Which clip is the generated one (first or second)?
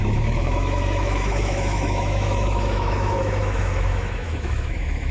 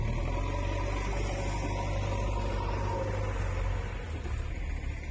first